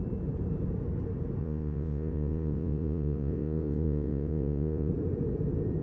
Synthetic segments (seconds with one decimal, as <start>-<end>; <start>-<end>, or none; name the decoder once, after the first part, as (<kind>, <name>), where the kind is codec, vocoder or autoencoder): 1.4-4.9 (vocoder, Vocos)